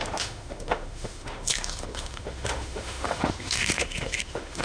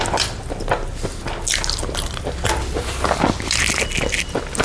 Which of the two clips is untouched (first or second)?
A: second